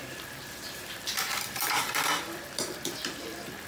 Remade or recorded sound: remade